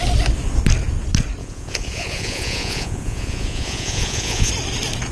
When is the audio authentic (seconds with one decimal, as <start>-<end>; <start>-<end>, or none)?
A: 0.0-1.4; 4.5-5.1